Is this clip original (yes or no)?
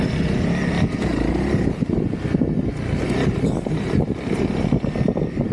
yes